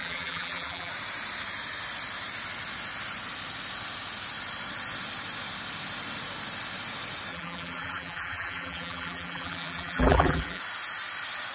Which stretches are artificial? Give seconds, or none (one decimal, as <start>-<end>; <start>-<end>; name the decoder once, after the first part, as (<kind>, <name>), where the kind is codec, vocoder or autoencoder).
0.0-0.9 (vocoder, BigVGAN v2); 7.3-10.6